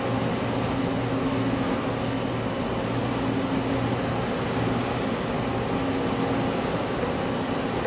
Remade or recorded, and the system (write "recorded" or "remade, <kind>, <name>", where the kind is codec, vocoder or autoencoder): recorded